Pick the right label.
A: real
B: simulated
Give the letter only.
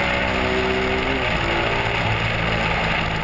A